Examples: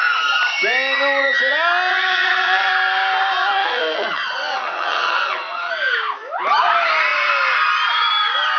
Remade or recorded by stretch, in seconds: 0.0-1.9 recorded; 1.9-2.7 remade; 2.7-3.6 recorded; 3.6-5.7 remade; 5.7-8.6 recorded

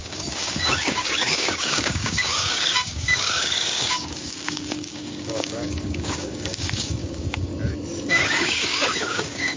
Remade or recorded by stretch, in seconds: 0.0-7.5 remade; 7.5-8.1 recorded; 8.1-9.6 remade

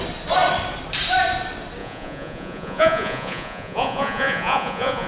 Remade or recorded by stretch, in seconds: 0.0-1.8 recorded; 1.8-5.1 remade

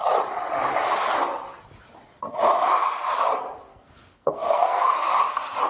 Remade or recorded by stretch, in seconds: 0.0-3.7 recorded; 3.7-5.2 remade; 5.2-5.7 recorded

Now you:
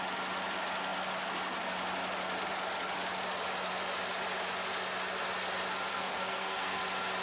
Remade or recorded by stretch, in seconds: 0.0-5.9 recorded; 5.9-6.8 remade; 6.8-7.2 recorded